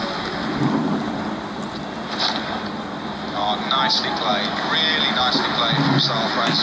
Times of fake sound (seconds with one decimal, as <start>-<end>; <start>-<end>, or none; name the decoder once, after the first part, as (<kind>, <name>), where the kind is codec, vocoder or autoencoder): none